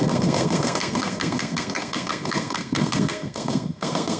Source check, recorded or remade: remade